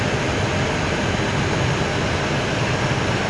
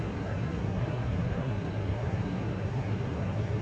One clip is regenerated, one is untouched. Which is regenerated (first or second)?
second